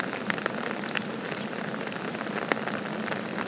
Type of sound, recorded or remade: recorded